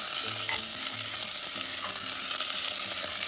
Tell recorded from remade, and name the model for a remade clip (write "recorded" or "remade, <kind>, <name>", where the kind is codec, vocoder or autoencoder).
recorded